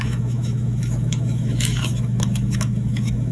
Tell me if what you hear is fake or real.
fake